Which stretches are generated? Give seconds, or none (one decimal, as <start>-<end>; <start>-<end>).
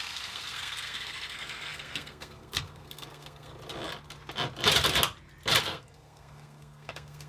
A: 0.0-3.5; 5.6-7.3